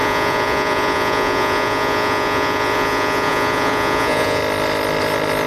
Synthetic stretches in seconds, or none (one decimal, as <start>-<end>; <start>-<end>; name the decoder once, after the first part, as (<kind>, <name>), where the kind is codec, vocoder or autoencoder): 0.0-4.4 (vocoder, Vocos)